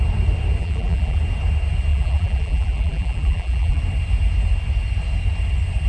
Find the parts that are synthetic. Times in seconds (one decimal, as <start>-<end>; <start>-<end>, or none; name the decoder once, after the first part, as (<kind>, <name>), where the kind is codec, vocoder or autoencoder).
0.6-1.2 (vocoder, BigVGAN v2); 1.9-3.8